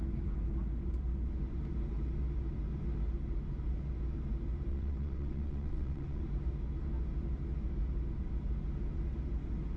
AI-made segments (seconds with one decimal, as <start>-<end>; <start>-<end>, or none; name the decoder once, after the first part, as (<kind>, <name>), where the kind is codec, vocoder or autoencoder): 4.7-6.2 (vocoder, WaveNeXt)